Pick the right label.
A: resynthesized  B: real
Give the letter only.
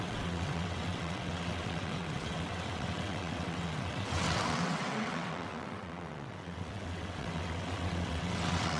A